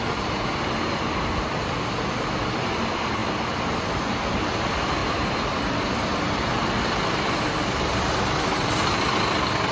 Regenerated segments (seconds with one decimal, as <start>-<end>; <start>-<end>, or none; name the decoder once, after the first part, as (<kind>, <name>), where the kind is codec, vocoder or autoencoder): none

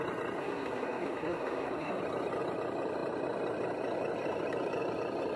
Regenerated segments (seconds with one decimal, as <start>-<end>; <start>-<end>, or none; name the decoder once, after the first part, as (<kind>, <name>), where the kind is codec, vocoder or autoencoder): 0.4-2.0 (codec, SNAC)